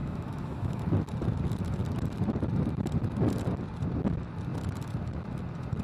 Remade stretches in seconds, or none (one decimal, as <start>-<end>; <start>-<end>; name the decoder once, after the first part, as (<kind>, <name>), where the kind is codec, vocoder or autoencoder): 0.0-0.8 (autoencoder, DAC-VAE)